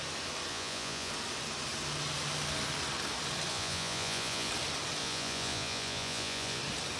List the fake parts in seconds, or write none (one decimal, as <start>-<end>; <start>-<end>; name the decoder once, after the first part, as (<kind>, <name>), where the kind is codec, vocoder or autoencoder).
0.5-1.1 (vocoder, Vocos); 3.5-4.5; 5.0-6.6

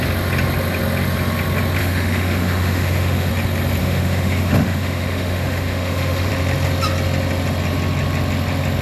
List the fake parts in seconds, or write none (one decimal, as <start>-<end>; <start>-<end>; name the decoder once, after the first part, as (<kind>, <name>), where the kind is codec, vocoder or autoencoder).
1.8-3.3 (autoencoder, DAC-VAE); 3.8-6.3